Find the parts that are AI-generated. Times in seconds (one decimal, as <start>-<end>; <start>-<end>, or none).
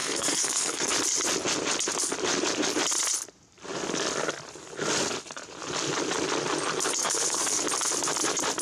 0.0-0.9; 7.0-7.6